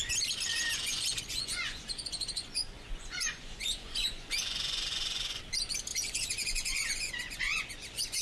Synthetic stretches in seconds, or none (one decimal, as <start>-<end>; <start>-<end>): 0.5-5.4; 5.9-8.2